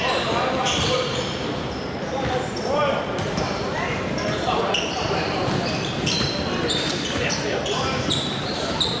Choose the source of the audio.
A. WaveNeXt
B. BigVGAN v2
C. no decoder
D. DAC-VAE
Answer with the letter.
B